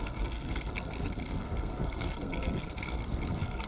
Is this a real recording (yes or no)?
no